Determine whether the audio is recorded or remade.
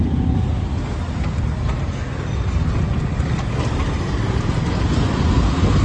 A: recorded